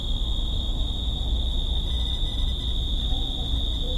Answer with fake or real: real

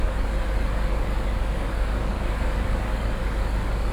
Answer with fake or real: fake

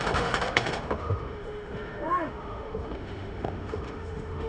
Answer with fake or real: fake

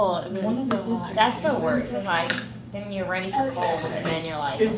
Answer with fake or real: fake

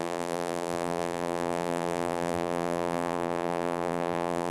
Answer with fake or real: fake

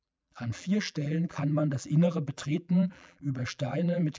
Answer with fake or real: fake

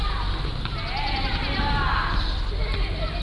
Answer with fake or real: real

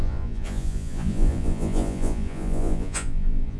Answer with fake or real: fake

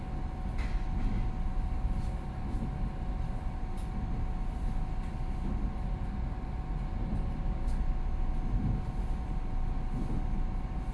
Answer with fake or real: real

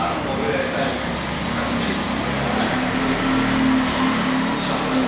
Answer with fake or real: real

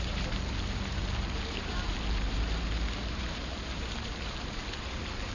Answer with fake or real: fake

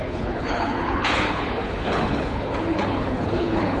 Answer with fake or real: fake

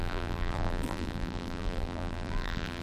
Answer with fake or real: fake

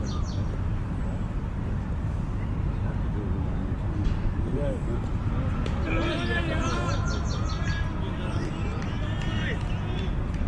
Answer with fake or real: real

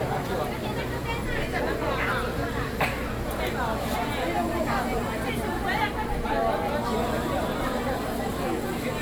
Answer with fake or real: real